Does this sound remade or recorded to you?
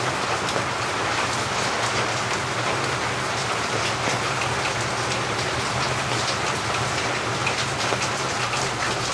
recorded